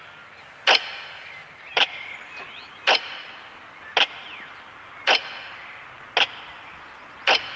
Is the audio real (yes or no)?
yes